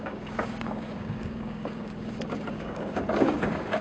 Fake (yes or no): yes